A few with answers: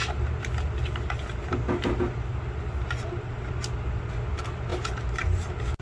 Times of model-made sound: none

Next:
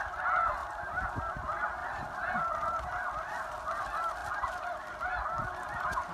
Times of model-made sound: none

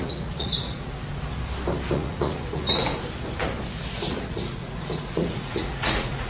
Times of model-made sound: 0.0-1.0 (vocoder, Vocos); 1.9-2.8; 3.9-6.3

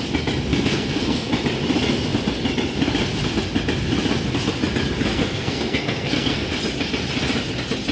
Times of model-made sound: 0.5-1.3 (codec, SNAC); 5.1-6.4

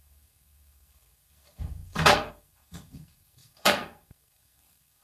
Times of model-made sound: 0.0-5.0 (codec, SNAC)

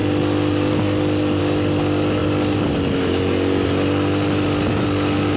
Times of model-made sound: none

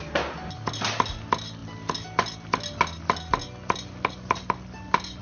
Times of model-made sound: none

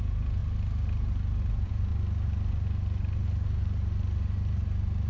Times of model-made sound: 0.0-0.4 (vocoder, Vocos); 1.5-1.9